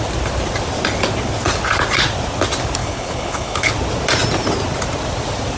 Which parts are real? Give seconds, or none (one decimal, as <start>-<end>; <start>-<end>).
0.0-2.8; 3.7-5.6